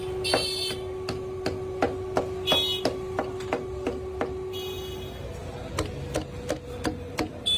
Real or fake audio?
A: real